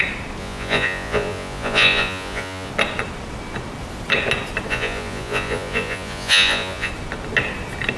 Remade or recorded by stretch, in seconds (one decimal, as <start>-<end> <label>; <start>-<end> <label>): 0.0-0.4 recorded; 0.4-2.7 remade; 2.7-4.7 recorded; 4.7-6.9 remade; 6.9-8.0 recorded